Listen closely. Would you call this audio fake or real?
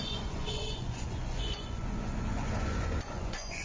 fake